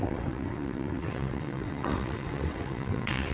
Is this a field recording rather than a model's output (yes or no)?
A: no